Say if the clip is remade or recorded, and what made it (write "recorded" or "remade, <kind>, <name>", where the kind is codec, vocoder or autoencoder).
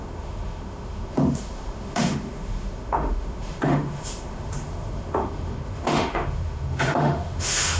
remade, autoencoder, DAC-VAE